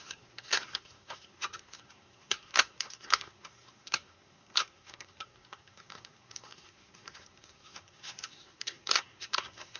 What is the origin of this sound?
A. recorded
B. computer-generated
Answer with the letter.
B